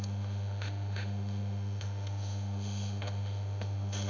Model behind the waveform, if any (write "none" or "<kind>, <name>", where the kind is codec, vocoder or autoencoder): autoencoder, DAC-VAE